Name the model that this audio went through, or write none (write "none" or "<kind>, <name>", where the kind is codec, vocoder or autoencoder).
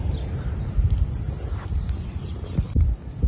none